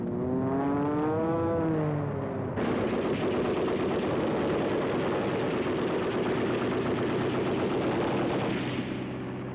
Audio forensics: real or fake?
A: real